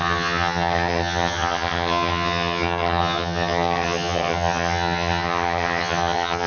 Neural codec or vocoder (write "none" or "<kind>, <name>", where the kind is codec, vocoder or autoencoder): vocoder, HiFi-GAN